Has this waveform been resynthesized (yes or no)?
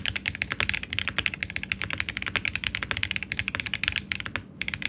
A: no